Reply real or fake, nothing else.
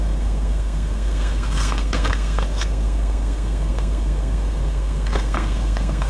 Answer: fake